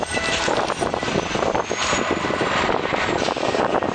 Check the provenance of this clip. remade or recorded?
remade